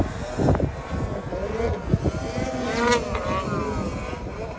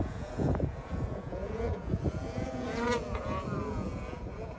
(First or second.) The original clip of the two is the first